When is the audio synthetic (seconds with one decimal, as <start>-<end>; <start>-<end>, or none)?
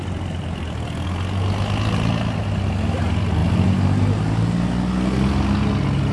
none